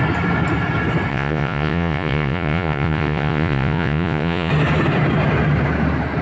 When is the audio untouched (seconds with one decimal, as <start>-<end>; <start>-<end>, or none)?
0.0-1.1; 4.5-6.2